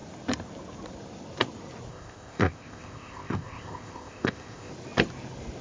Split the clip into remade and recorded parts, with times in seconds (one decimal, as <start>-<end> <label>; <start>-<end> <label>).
0.0-1.9 recorded; 1.9-4.7 remade; 4.7-5.6 recorded